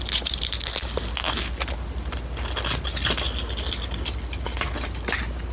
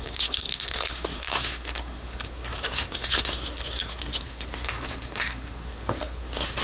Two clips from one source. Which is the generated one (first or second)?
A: second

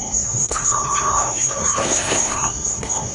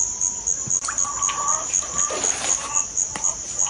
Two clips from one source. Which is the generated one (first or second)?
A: first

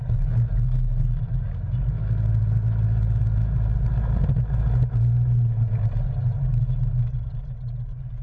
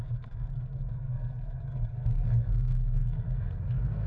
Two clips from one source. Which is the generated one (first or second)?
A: second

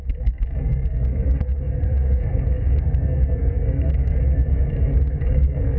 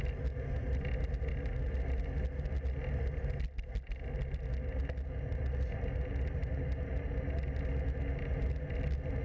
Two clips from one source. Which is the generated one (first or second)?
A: first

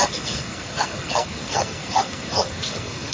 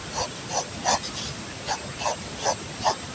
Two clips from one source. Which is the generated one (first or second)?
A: first